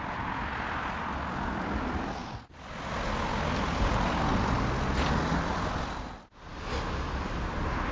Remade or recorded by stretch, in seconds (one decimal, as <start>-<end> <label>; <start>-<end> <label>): 0.0-7.9 recorded